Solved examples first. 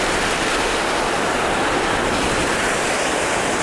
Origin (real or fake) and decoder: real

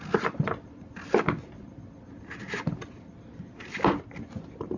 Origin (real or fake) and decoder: real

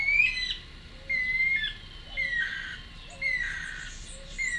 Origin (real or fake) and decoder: real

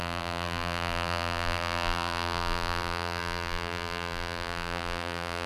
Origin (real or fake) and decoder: fake, vocoder, BigVGAN v2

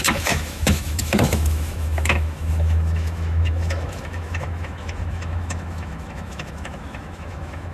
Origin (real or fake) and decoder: fake, autoencoder, DAC-VAE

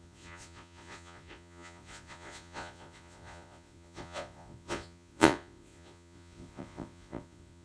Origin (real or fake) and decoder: fake, vocoder, Vocos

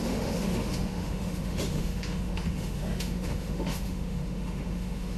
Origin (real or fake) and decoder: fake, autoencoder, DAC-VAE